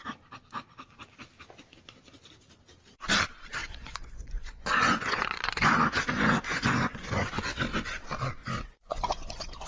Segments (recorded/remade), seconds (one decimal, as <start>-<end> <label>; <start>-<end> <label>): 0.0-3.6 recorded; 3.6-8.0 remade; 8.0-8.4 recorded; 8.4-9.7 remade